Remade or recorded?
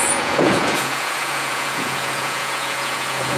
remade